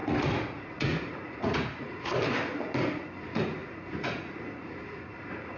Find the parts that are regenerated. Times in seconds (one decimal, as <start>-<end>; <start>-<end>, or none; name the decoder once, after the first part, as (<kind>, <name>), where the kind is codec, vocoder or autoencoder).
0.0-2.1 (vocoder, Vocos); 3.2-5.6